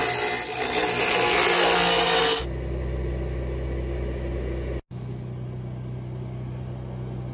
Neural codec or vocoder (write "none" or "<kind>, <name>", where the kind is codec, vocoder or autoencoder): none